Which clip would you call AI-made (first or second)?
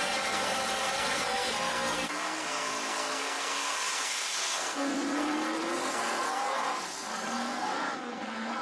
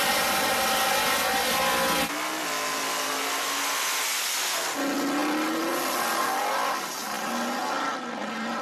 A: first